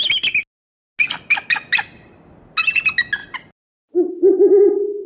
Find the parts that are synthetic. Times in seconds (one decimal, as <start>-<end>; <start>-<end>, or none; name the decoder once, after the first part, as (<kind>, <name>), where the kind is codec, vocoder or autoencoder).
none